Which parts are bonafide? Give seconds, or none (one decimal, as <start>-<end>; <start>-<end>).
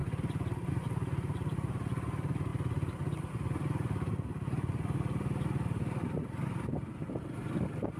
0.0-8.0